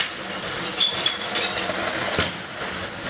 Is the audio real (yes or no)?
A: yes